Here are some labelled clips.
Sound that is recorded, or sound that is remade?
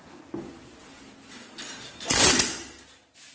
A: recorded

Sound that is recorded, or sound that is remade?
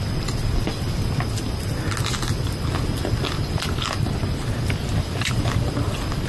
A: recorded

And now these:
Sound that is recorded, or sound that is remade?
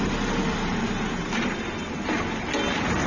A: recorded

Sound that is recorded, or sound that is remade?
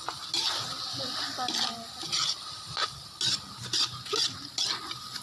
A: recorded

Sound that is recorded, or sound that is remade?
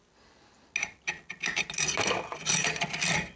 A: recorded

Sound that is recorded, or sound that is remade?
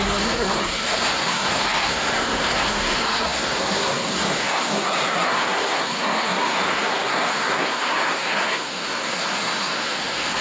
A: remade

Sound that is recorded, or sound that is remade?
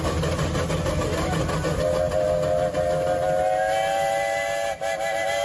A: recorded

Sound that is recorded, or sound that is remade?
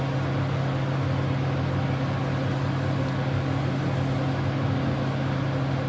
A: recorded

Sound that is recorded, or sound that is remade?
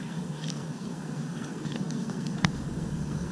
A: remade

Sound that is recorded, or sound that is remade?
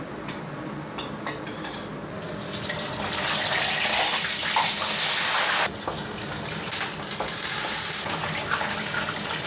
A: recorded